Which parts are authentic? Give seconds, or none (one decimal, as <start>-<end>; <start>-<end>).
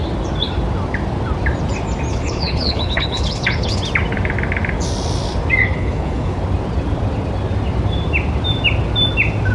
0.0-2.1; 3.8-5.6; 6.4-9.5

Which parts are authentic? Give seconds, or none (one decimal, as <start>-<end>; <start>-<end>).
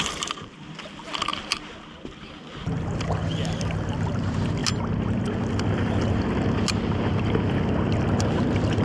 0.0-8.8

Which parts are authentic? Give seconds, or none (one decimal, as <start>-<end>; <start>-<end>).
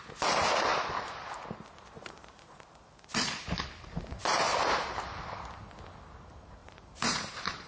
0.0-0.7; 3.6-6.6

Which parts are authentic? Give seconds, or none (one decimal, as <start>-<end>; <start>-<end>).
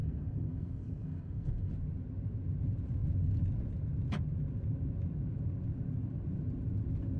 1.7-7.2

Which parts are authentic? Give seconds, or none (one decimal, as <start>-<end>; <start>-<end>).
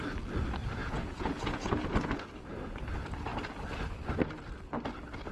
0.0-0.8; 2.1-5.3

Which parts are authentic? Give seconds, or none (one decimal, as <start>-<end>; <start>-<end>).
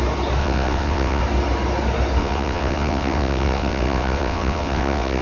0.0-0.4; 1.2-2.2